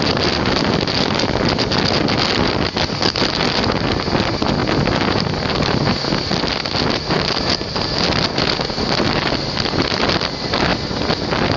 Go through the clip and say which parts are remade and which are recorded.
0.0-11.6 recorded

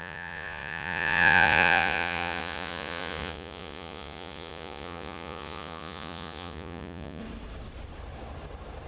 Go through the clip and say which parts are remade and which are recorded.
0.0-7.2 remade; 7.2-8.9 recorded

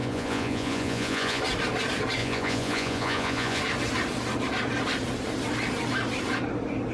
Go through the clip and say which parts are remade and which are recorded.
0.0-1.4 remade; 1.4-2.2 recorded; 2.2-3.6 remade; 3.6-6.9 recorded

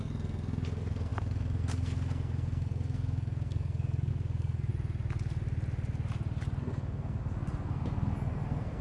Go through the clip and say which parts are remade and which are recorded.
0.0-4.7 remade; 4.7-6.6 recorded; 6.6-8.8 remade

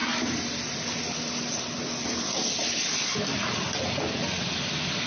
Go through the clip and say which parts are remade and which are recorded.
0.0-5.1 recorded

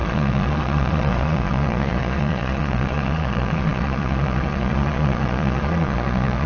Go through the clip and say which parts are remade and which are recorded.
0.0-6.5 remade

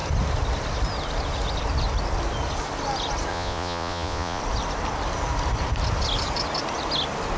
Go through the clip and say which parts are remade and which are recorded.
0.0-3.3 recorded; 3.3-4.4 remade; 4.4-7.4 recorded

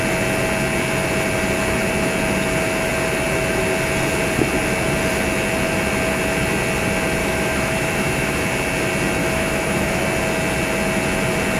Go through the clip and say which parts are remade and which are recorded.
0.0-7.2 recorded; 7.2-8.4 remade; 8.4-9.2 recorded; 9.2-10.0 remade; 10.0-11.6 recorded